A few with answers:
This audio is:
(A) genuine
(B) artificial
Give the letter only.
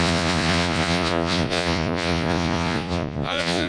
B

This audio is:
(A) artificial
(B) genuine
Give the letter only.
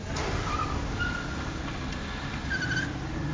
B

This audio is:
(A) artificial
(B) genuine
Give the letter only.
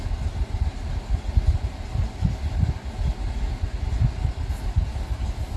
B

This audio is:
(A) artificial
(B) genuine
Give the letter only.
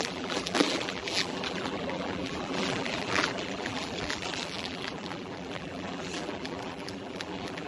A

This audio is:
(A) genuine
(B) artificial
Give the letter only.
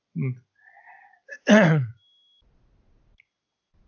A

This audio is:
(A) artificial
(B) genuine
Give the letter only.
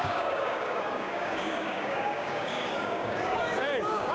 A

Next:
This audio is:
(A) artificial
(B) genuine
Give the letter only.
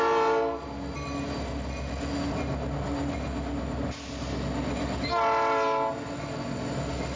B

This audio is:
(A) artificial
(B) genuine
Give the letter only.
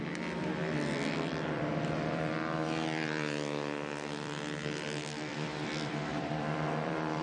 A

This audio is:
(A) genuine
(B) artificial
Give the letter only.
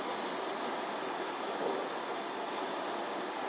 A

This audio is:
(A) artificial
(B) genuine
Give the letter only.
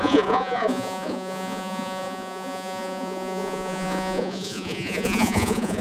A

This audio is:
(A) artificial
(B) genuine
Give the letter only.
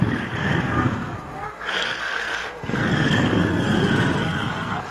A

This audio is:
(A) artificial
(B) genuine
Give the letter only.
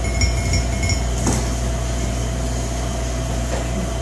B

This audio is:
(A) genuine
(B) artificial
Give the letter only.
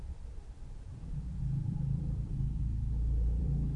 B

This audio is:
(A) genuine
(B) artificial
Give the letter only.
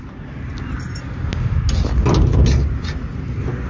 A